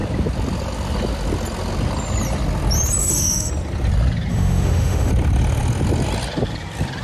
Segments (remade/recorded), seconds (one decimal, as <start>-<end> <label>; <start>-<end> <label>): 0.0-3.0 recorded; 3.0-3.5 remade; 3.5-4.3 recorded; 4.3-5.1 remade; 5.1-7.0 recorded